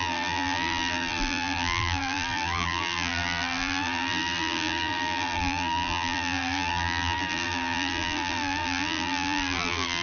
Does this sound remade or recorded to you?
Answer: remade